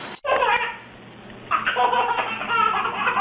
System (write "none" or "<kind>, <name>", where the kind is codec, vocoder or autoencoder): none